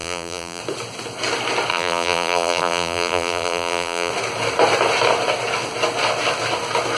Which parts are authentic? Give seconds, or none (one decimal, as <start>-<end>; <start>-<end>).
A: 0.6-1.7; 4.1-7.0